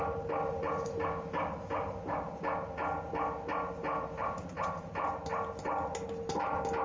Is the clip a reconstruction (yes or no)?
no